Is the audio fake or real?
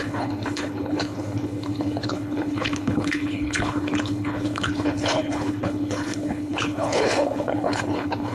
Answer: fake